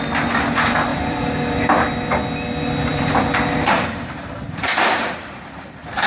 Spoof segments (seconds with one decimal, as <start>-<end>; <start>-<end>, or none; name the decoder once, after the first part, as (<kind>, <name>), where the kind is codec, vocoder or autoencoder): 0.9-1.6 (vocoder, BigVGAN v2); 2.9-6.1